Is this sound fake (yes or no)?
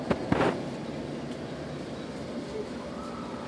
no